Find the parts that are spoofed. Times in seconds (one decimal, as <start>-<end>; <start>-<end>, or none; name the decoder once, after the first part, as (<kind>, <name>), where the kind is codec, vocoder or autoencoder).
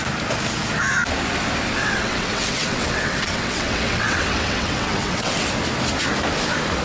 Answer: 1.8-5.5 (vocoder, WaveNeXt)